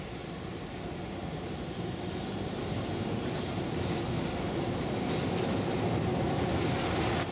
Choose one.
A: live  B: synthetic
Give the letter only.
A